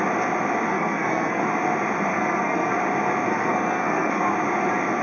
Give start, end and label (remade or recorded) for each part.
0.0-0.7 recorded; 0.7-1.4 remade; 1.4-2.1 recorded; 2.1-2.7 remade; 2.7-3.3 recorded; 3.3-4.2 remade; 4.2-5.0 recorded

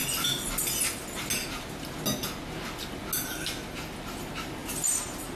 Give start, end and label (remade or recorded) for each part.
0.0-5.4 recorded

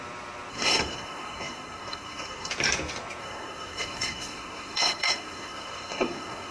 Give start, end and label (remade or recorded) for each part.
0.0-0.5 recorded; 0.5-2.5 remade; 2.5-3.2 recorded; 3.2-6.5 remade